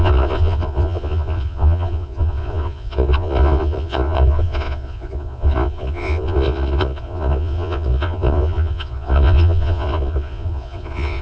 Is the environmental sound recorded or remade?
remade